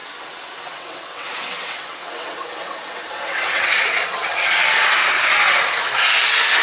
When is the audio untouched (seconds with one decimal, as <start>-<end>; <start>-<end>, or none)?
4.0-6.6